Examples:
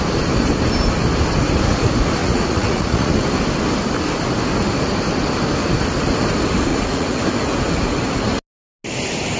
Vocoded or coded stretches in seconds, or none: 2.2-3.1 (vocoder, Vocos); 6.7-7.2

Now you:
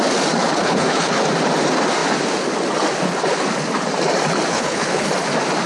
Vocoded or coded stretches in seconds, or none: 0.5-1.2 (codec, HILCodec); 4.5-5.1

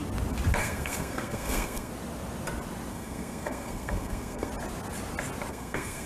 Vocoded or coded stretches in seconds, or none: 0.6-1.9 (codec, SNAC); 2.9-4.5; 5.5-6.1

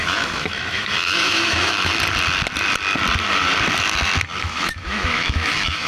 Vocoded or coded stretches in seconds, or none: 0.0-1.9 (autoencoder, DAC-VAE); 4.4-5.9

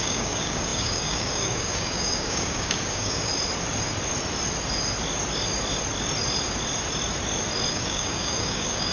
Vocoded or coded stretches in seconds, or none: 0.0-3.3 (codec, DAC); 7.7-8.9